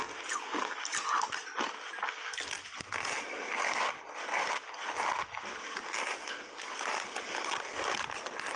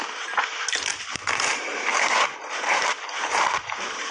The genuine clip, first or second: first